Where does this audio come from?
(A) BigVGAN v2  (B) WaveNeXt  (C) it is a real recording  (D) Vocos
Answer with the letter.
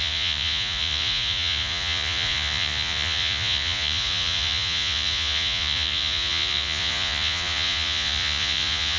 D